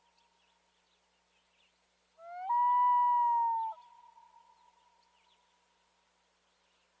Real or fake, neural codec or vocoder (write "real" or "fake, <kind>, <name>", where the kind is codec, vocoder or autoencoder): real